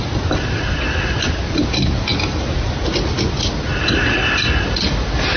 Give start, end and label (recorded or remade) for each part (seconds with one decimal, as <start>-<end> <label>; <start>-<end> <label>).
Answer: 0.0-5.4 recorded